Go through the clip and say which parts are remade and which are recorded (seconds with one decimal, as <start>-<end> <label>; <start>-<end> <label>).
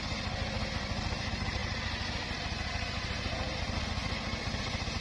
0.0-5.0 recorded